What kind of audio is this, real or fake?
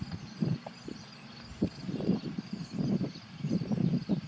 fake